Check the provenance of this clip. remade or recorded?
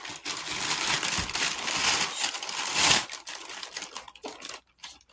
recorded